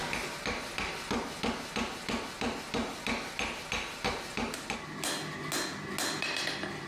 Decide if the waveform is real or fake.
real